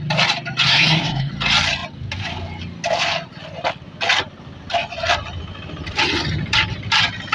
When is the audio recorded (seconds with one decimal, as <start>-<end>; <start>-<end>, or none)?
0.0-0.7; 1.3-7.3